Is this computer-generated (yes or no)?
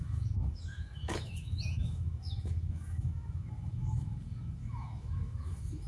yes